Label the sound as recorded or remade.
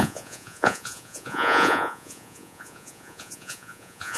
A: remade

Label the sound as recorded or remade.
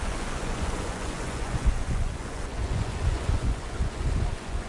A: remade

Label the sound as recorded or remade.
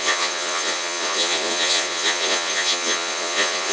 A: remade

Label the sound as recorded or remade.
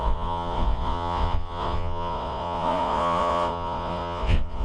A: remade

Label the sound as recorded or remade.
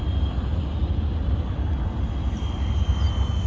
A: recorded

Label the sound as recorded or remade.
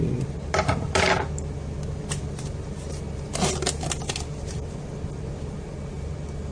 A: recorded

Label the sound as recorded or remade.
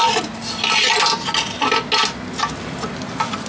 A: recorded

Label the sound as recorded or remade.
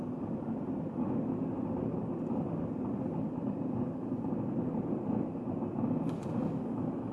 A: recorded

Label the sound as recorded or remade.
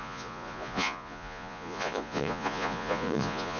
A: remade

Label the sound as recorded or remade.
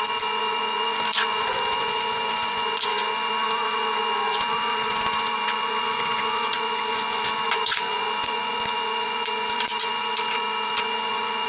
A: remade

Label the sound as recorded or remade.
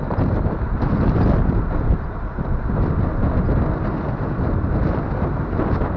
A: recorded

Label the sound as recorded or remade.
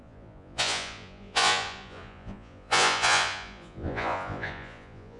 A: remade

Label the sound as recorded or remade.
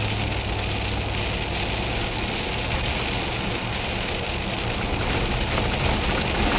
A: recorded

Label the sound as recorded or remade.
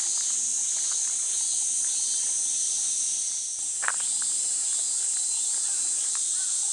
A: recorded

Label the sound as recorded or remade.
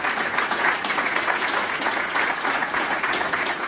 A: remade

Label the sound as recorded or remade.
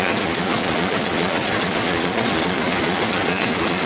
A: remade